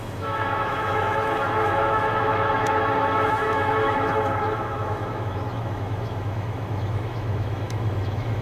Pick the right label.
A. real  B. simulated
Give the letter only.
B